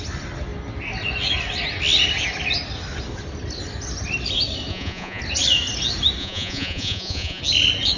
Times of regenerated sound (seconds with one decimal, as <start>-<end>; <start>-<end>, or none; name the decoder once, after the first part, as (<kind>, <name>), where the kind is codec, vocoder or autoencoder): 4.7-5.2 (vocoder, Vocos); 6.2-7.4